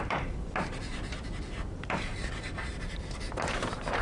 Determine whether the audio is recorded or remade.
remade